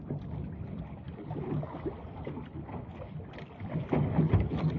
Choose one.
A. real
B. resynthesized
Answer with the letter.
A